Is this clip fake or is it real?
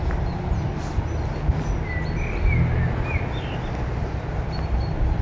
real